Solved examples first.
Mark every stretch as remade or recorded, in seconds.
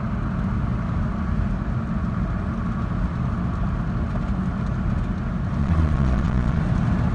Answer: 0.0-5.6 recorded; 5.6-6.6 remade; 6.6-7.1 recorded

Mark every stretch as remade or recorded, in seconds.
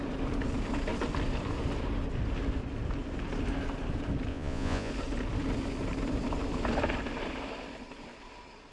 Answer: 0.0-4.3 recorded; 4.3-4.9 remade; 4.9-8.7 recorded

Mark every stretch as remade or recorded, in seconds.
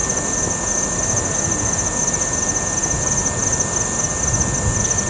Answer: 0.0-5.1 recorded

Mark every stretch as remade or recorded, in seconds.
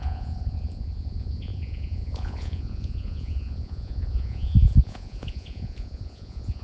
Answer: 0.0-6.6 remade